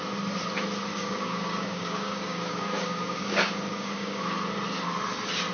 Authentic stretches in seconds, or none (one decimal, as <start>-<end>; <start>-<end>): 0.0-0.9; 4.2-5.5